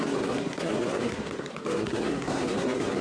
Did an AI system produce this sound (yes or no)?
yes